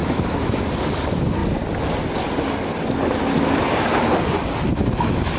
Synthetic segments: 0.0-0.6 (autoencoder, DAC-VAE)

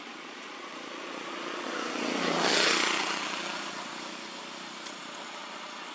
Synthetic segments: 0.0-3.9 (vocoder, Vocos); 4.9-5.9

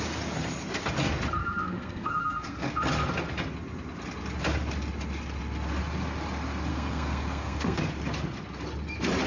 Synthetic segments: 1.4-2.7 (codec, SNAC); 6.7-7.8

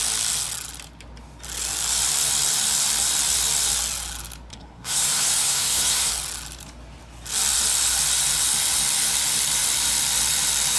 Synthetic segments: 4.5-6.1 (codec, SNAC)

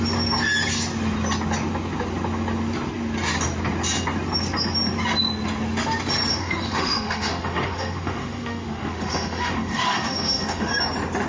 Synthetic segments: 6.3-10.7 (autoencoder, DAC-VAE)